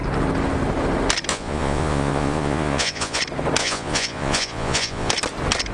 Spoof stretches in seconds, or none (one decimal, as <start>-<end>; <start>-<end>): 1.3-3.2; 3.6-5.1